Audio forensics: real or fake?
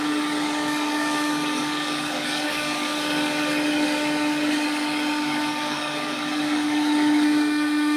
fake